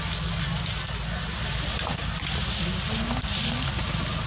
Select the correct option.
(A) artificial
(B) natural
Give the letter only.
B